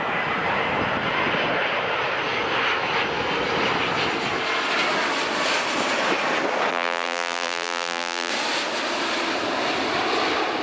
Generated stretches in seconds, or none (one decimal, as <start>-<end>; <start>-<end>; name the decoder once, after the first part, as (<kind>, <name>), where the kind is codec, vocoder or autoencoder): 6.7-8.3 (vocoder, BigVGAN v2)